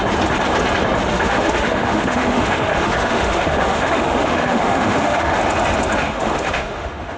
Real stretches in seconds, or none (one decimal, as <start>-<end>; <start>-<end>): 0.0-1.1; 5.4-6.0